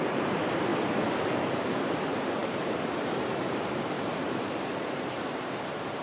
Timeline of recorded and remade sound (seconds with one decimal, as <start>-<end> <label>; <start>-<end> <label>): 0.0-0.7 remade; 0.7-1.4 recorded; 1.4-6.0 remade